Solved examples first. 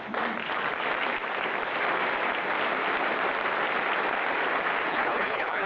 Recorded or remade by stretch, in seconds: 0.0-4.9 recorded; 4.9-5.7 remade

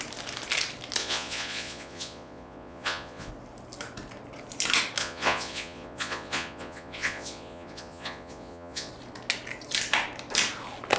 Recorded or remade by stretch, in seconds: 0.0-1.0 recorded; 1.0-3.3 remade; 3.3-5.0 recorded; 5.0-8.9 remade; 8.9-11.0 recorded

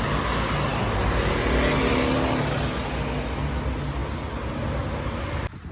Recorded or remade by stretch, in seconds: 0.0-5.7 recorded

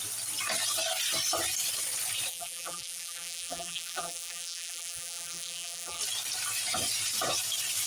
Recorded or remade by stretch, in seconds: 0.0-2.3 recorded; 2.3-6.0 remade; 6.0-7.9 recorded

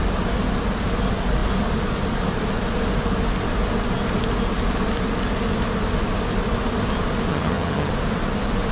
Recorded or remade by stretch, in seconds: 0.0-7.3 recorded; 7.3-7.9 remade; 7.9-8.7 recorded